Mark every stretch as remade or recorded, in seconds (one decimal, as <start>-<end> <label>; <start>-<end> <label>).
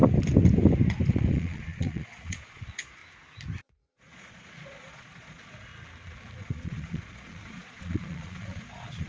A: 0.0-1.3 recorded; 1.3-3.0 remade; 3.0-3.6 recorded; 3.6-5.7 remade; 5.7-6.4 recorded; 6.4-9.1 remade